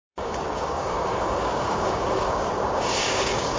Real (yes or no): no